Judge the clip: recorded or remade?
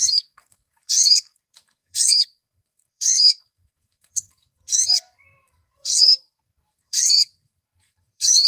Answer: remade